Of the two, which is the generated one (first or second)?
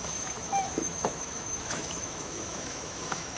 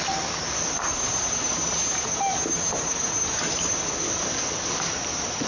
first